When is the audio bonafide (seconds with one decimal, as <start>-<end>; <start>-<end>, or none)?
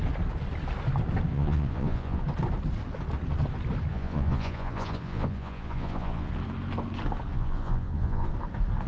0.0-1.3; 2.2-3.9; 6.3-7.3; 8.3-8.9